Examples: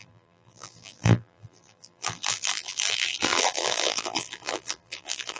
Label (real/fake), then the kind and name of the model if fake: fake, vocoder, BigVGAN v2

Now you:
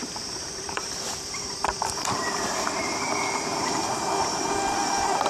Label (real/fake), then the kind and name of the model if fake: fake, vocoder, BigVGAN v2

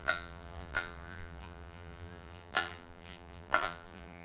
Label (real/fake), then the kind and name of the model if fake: fake, vocoder, BigVGAN v2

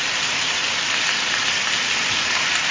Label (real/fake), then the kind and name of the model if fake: fake, vocoder, BigVGAN v2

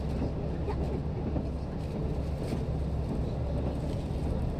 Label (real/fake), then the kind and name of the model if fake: real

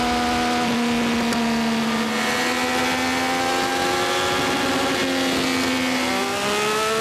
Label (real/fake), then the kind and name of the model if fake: real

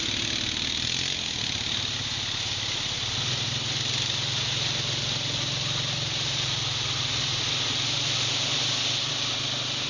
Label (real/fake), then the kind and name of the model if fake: real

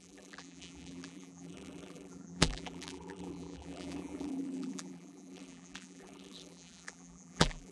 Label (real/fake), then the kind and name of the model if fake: fake, vocoder, BigVGAN v2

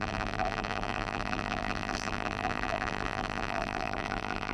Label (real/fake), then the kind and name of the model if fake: fake, vocoder, BigVGAN v2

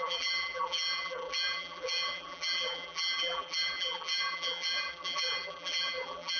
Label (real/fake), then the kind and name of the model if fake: fake, vocoder, BigVGAN v2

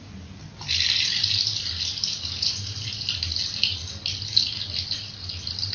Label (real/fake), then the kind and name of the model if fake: real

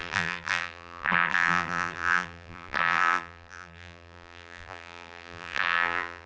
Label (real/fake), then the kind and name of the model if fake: fake, vocoder, BigVGAN v2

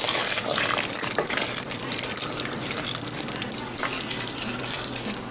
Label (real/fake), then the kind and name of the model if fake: fake, vocoder, BigVGAN v2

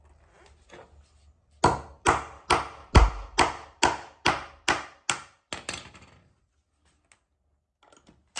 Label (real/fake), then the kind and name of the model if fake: real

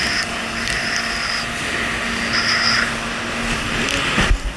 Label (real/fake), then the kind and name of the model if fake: real